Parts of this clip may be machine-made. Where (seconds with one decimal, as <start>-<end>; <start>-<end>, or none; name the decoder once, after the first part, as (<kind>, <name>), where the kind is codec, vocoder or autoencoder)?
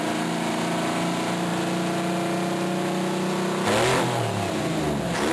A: none